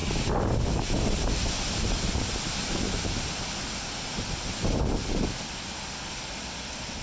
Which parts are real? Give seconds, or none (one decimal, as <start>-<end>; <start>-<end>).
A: 0.0-7.0

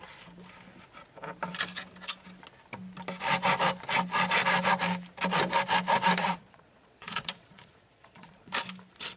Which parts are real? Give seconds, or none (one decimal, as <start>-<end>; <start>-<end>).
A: 0.0-6.2; 8.5-9.2

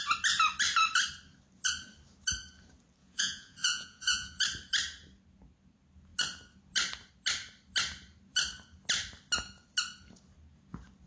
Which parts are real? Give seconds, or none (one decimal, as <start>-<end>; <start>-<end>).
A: 0.0-3.0; 4.4-11.1

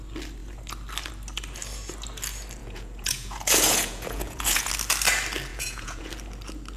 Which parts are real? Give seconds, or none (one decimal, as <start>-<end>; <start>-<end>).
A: 0.0-2.6; 4.7-5.5; 6.1-6.8

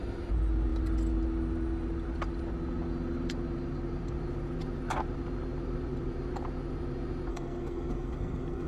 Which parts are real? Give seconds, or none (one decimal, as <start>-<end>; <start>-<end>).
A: 0.0-7.3